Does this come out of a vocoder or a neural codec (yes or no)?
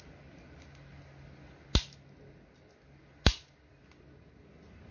no